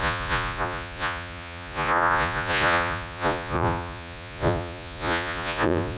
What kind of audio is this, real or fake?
fake